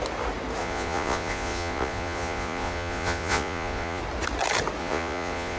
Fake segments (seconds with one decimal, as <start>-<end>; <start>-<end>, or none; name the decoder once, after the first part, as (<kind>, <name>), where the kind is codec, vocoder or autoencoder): 0.6-4.0 (vocoder, Vocos); 4.8-5.6